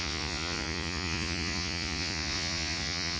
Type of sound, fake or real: fake